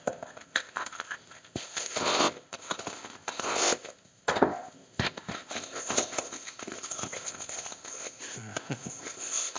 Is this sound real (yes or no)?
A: no